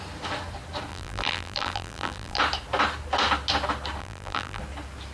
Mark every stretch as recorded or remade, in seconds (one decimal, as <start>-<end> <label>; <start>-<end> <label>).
0.0-0.9 recorded; 0.9-2.4 remade; 2.4-4.0 recorded; 4.0-4.6 remade; 4.6-5.1 recorded